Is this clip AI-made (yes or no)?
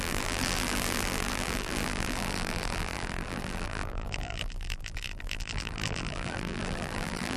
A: yes